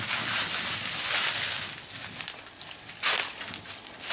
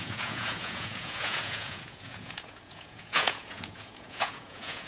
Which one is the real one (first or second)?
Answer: first